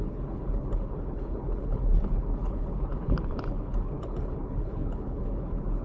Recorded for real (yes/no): no